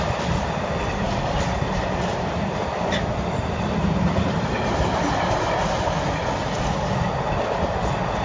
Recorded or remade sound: recorded